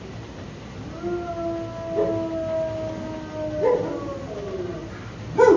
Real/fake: real